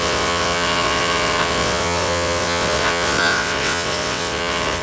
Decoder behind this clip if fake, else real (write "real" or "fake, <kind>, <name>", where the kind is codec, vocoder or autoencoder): fake, vocoder, WaveNeXt